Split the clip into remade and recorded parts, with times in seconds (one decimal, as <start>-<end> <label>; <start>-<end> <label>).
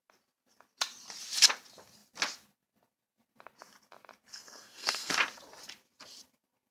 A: 0.0-4.3 recorded; 4.3-5.1 remade; 5.1-6.7 recorded